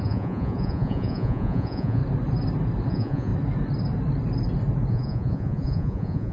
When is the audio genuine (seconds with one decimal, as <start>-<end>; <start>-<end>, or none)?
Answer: 2.0-2.9; 3.3-4.9